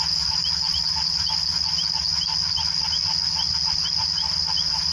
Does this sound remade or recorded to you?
recorded